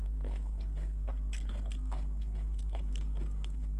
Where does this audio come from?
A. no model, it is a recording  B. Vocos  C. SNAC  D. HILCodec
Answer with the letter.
C